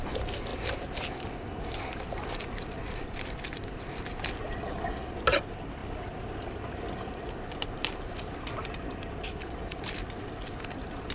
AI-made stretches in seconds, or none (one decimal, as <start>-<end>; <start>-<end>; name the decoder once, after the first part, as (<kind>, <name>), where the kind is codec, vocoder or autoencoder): 0.5-1.1 (vocoder, BigVGAN v2); 5.8-9.8